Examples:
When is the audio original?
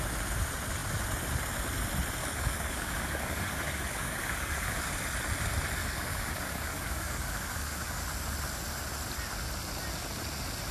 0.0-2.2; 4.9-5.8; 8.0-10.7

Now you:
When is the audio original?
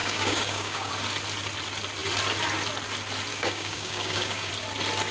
0.9-3.3; 4.5-5.1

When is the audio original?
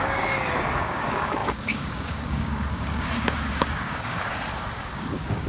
none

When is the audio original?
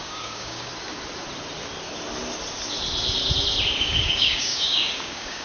0.7-3.8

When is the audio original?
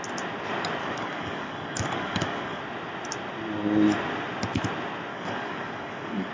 0.0-0.8; 2.6-5.1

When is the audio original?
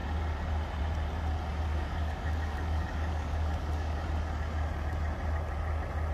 0.0-1.7; 4.0-6.1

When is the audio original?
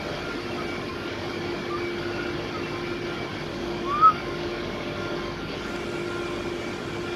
0.0-0.9; 1.6-3.5; 5.6-7.2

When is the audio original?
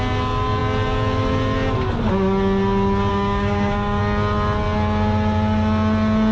0.0-3.1; 4.0-6.3